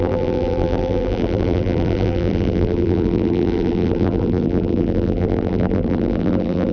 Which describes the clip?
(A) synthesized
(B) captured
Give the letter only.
A